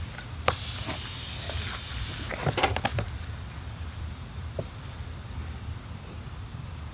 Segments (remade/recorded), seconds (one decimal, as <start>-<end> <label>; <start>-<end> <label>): 0.0-2.9 recorded; 2.9-6.1 remade; 6.1-6.9 recorded